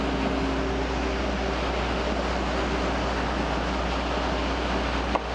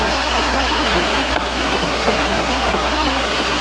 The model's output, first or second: second